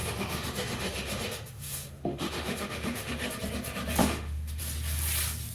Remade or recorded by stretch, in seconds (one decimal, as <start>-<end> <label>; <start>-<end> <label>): 0.0-3.3 remade; 3.3-4.0 recorded; 4.0-4.6 remade; 4.6-5.5 recorded